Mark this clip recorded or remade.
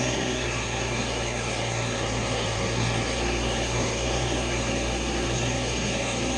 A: remade